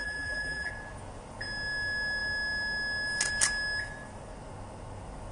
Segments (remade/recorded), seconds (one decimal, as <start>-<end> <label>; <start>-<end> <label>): 0.0-0.7 remade; 0.7-5.3 recorded